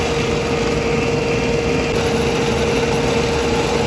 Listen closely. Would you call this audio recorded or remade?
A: recorded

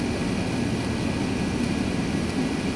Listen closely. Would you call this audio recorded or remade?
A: recorded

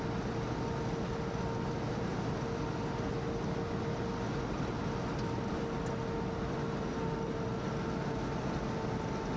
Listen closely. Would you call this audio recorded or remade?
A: recorded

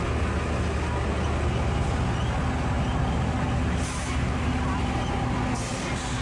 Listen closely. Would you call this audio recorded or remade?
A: recorded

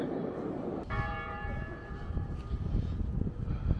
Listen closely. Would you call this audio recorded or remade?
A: remade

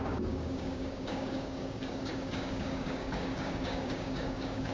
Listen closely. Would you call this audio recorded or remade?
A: remade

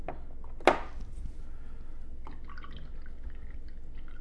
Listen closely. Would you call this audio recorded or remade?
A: recorded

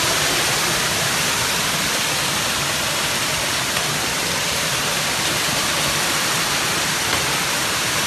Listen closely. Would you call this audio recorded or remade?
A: remade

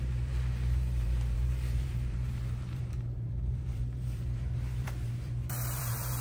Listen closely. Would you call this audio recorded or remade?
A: remade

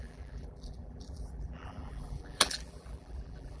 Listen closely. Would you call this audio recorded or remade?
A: remade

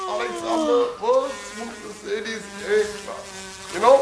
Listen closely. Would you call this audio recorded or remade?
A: recorded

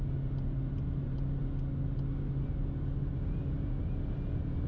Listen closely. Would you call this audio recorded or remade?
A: recorded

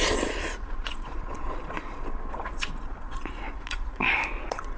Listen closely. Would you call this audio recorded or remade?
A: remade